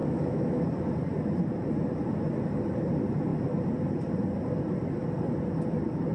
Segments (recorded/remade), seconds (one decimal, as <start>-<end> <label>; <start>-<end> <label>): 0.0-0.6 remade; 0.6-6.1 recorded